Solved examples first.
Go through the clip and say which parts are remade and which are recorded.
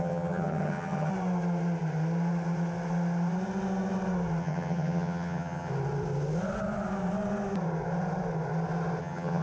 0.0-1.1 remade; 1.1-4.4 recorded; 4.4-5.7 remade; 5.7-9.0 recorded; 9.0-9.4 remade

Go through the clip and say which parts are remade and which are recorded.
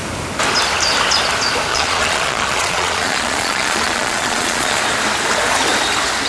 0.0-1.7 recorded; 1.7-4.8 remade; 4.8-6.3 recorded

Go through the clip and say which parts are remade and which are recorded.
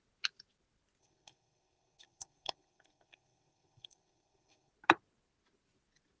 0.0-1.0 recorded; 1.0-4.7 remade; 4.7-6.2 recorded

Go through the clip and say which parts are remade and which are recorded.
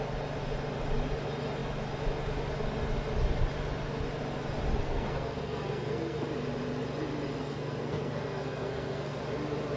0.0-4.8 recorded; 4.8-6.2 remade; 6.2-7.4 recorded; 7.4-9.2 remade; 9.2-9.8 recorded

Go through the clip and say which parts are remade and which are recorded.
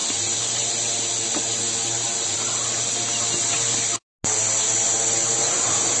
0.0-6.0 recorded